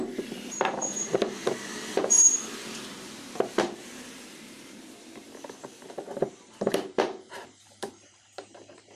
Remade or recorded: remade